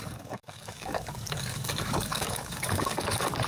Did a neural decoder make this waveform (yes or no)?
yes